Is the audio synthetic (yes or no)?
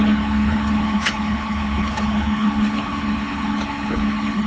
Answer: yes